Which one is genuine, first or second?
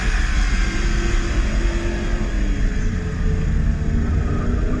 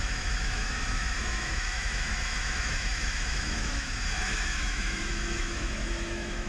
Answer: first